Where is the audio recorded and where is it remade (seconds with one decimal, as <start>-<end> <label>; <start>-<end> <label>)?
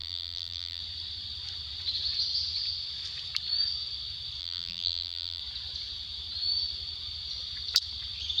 0.0-0.8 remade; 0.8-4.4 recorded; 4.4-5.4 remade; 5.4-8.4 recorded